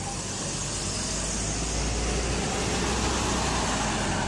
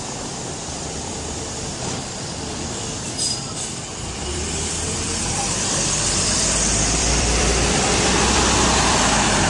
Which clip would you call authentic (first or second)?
first